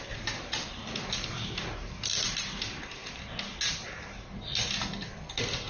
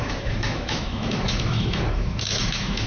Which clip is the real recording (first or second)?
first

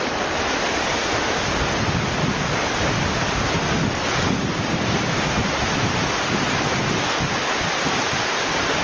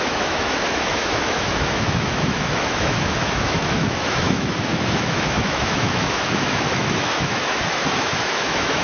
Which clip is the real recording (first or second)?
first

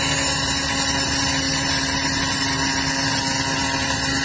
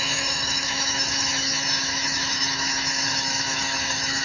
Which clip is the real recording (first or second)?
first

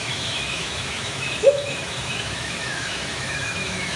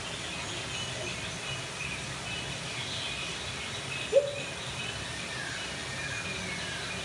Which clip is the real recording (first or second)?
second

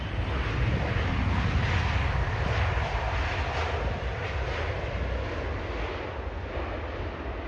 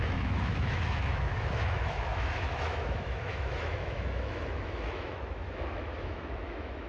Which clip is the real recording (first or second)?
first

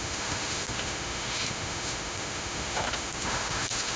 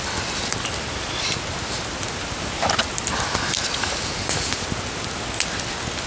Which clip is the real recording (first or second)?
second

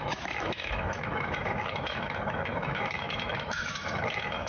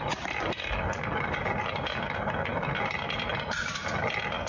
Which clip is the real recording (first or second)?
second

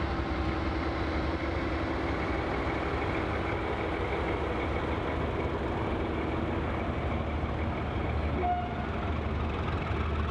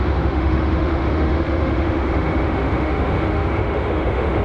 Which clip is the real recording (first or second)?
first